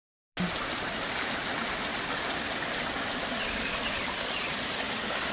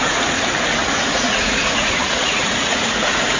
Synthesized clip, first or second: second